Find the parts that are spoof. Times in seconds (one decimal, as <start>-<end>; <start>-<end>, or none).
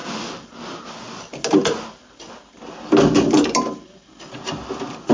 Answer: none